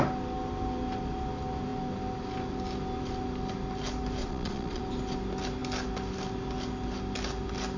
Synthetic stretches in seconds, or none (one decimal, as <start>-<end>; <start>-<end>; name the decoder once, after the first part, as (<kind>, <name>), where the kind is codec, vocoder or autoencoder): 4.2-4.8 (vocoder, Vocos)